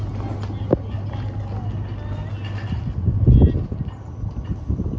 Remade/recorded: recorded